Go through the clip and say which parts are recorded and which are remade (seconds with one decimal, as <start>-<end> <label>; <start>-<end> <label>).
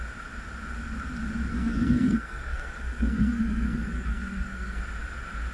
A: 0.0-1.5 recorded; 1.5-4.8 remade; 4.8-5.5 recorded